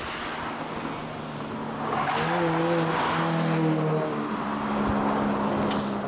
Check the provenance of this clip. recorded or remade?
recorded